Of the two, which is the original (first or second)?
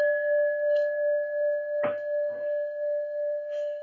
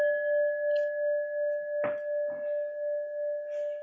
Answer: second